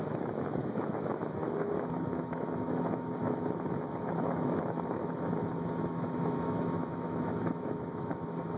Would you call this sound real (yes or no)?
no